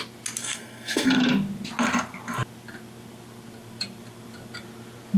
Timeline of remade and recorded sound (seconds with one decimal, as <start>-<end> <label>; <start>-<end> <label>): 0.0-0.4 recorded; 0.4-1.2 remade; 1.2-5.2 recorded